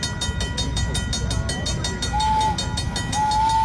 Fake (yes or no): no